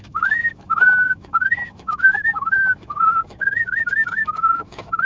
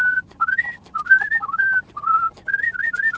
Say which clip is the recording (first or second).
second